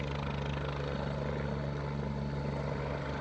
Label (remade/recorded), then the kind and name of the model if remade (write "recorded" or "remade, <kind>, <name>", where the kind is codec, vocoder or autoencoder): recorded